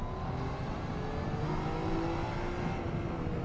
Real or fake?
real